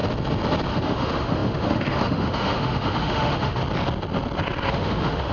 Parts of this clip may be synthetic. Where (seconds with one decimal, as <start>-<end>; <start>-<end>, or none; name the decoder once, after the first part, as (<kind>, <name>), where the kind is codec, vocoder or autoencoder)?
0.7-3.6 (autoencoder, DAC-VAE); 4.7-5.3